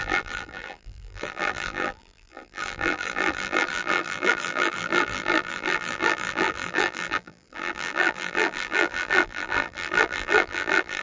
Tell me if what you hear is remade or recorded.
remade